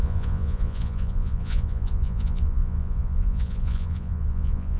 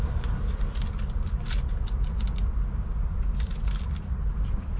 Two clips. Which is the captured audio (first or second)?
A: second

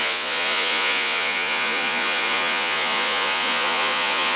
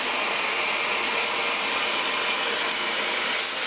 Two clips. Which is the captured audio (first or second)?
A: second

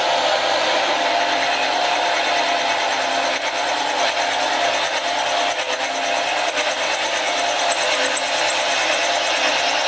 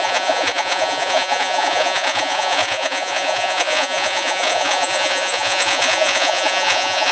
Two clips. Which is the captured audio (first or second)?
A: first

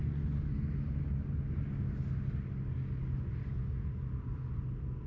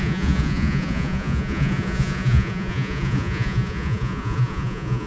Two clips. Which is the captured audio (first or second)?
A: first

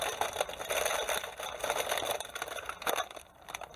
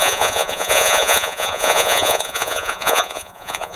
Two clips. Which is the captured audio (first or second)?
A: first